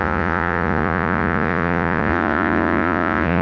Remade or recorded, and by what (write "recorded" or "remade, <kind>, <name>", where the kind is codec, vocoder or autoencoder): remade, vocoder, Vocos